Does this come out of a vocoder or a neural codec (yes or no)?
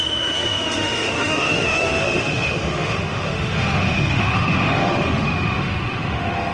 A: yes